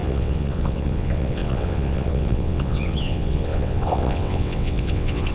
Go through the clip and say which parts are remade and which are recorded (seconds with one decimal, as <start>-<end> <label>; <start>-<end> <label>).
0.0-5.3 remade